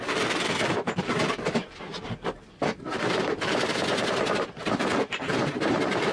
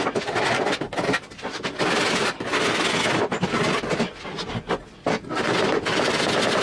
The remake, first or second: first